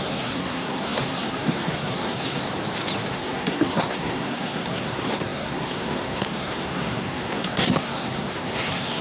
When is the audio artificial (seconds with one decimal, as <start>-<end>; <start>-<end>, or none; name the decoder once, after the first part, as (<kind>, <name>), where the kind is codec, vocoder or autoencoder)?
0.0-2.4 (codec, SNAC); 3.1-9.0

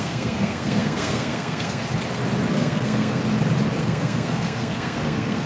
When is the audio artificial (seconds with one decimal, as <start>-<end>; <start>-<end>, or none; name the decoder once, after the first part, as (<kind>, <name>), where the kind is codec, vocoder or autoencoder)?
0.0-1.8 (codec, SNAC); 2.5-3.2; 3.8-5.5

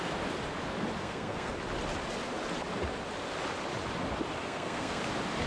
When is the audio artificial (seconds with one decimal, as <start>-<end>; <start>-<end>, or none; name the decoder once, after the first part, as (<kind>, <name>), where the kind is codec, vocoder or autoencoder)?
1.0-1.5 (codec, SNAC); 4.4-5.0

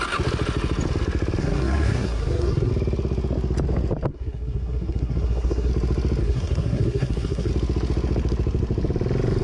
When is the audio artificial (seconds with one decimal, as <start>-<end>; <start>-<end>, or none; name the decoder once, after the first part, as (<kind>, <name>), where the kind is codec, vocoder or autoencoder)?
1.4-2.7 (codec, SNAC); 4.1-5.7; 6.2-7.5

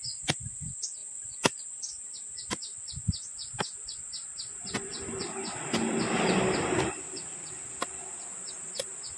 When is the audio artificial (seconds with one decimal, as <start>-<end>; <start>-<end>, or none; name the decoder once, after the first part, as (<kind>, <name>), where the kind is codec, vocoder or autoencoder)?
none

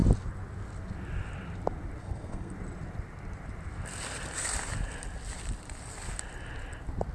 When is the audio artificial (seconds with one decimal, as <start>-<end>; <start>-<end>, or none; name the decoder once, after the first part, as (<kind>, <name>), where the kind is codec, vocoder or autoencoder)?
2.0-2.5 (codec, SNAC)

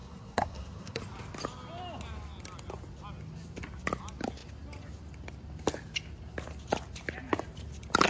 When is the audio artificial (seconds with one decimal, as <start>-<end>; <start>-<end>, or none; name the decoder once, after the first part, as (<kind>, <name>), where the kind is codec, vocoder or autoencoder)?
0.0-1.0 (codec, SNAC)